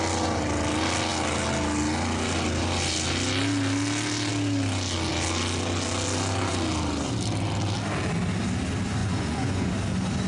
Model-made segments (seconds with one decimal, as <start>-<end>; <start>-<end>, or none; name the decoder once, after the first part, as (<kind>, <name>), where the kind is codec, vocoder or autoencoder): 9.0-9.7 (vocoder, Vocos)